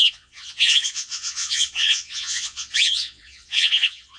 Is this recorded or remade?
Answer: remade